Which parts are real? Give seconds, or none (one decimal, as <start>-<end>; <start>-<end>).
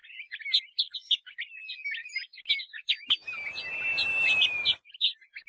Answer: 0.0-5.5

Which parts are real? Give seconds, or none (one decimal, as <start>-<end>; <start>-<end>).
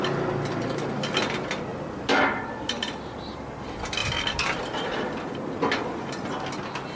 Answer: 0.0-7.0